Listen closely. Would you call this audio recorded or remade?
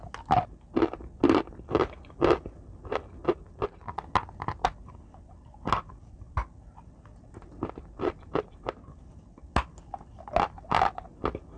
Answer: recorded